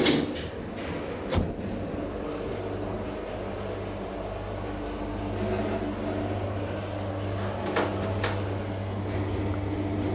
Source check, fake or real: real